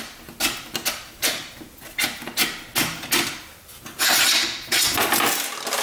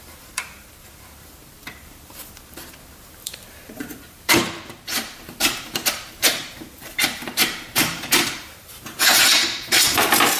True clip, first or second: first